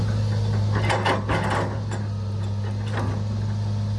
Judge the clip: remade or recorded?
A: recorded